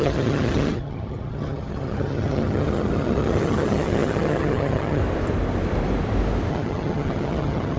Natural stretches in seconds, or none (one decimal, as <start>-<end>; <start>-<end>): 5.0-6.5